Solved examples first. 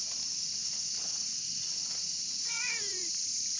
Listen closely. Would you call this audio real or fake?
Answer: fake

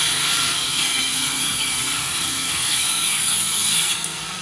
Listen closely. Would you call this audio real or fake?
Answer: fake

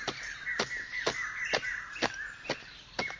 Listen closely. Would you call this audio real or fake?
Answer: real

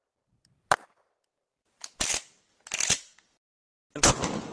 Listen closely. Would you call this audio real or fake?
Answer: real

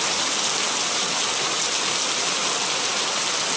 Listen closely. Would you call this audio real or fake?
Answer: real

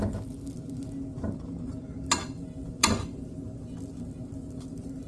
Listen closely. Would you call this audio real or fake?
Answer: real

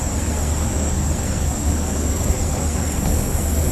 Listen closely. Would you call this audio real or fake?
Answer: fake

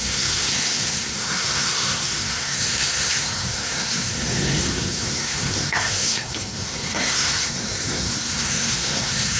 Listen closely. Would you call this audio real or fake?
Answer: fake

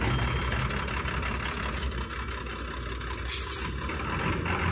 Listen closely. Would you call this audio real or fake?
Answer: real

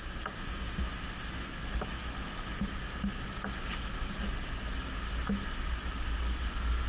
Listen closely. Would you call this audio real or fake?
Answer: real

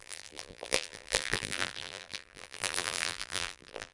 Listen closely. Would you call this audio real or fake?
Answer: fake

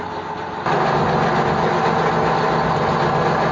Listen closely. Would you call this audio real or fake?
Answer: real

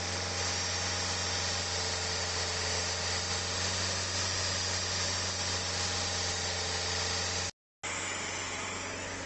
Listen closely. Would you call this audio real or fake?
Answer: real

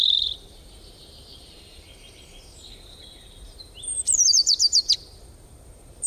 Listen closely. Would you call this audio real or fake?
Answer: fake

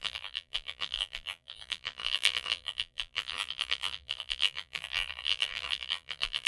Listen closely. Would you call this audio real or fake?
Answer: fake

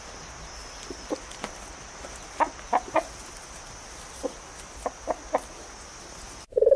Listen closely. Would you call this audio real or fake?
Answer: real